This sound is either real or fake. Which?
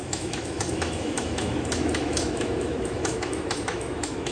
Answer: fake